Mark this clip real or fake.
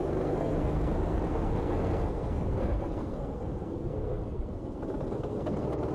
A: fake